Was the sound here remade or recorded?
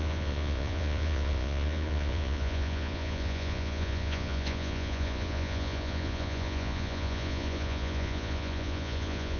remade